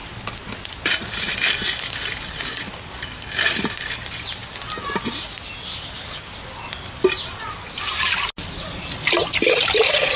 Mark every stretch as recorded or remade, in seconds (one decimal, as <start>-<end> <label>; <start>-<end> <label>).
0.0-4.4 remade; 4.4-8.5 recorded; 8.5-10.2 remade